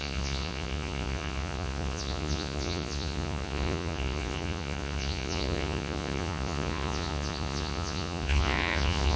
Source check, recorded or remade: remade